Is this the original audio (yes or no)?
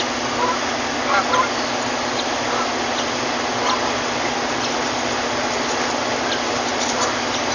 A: yes